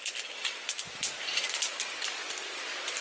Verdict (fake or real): real